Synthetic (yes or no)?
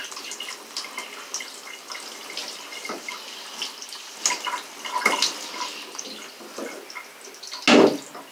no